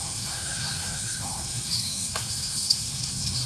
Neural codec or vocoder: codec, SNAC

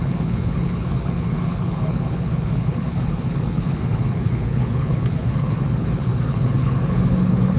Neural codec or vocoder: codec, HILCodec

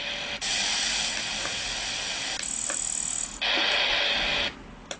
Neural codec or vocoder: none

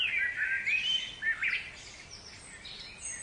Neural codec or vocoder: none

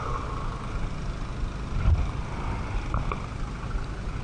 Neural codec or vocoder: none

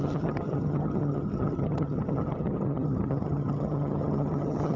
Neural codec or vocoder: vocoder, HiFi-GAN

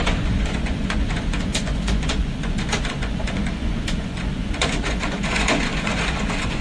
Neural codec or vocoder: vocoder, Vocos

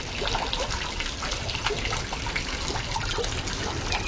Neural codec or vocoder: none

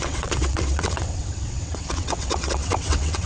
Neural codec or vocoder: vocoder, WaveNeXt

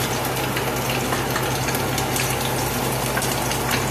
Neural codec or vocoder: none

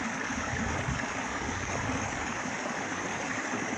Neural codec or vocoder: codec, DAC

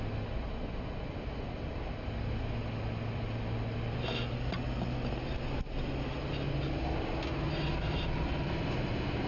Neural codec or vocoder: none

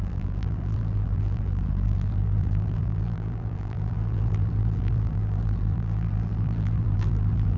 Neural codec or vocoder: vocoder, BigVGAN v2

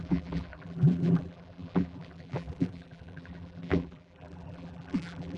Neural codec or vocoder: vocoder, BigVGAN v2